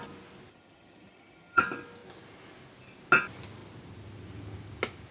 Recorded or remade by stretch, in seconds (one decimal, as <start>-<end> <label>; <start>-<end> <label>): 0.0-0.5 recorded; 0.5-1.6 remade; 1.6-5.1 recorded